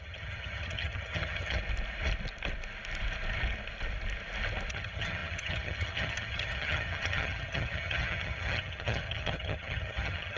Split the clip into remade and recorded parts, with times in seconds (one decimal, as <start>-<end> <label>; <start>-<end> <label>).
0.0-1.6 remade; 1.6-4.7 recorded; 4.7-10.4 remade